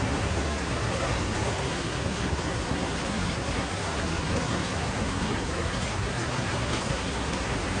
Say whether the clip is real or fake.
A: fake